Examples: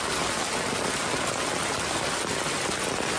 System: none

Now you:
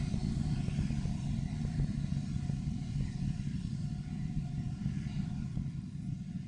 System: none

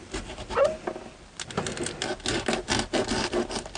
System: none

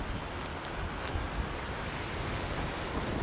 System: none